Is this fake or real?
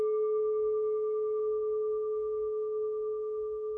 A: fake